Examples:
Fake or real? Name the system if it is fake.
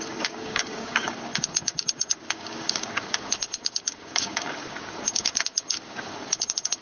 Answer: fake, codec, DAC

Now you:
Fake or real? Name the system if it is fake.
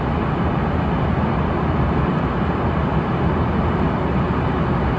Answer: real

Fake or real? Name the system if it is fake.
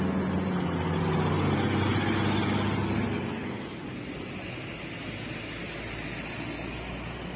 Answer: real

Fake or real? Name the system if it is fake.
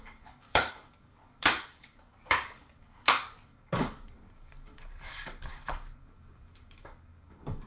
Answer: fake, codec, DAC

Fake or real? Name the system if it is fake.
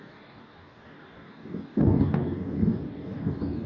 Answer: fake, codec, DAC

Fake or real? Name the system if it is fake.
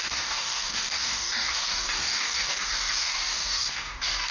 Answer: fake, codec, DAC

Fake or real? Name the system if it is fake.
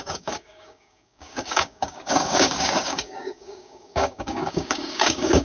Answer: fake, codec, DAC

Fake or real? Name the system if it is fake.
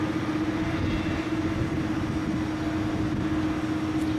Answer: real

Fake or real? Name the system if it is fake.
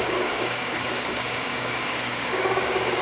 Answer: fake, codec, DAC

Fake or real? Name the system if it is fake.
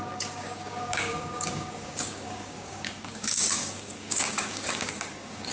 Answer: fake, codec, DAC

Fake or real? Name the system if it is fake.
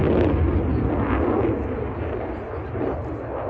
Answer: real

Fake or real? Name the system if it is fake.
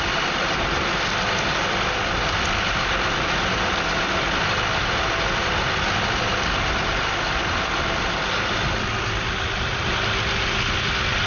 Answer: real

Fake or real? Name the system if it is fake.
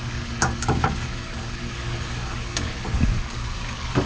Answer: fake, codec, DAC